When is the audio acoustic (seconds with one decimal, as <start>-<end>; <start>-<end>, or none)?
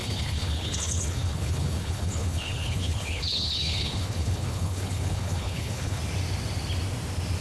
6.0-7.4